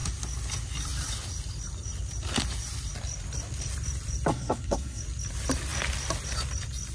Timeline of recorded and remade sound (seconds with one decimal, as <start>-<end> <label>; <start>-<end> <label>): 0.0-4.3 recorded; 4.3-5.0 remade; 5.0-6.9 recorded